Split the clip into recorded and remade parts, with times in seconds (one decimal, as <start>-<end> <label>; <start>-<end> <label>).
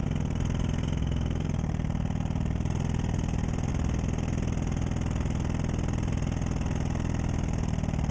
0.0-8.1 recorded